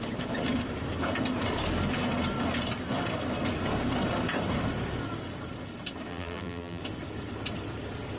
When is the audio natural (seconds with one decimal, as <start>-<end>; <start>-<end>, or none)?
0.0-6.1; 6.8-8.2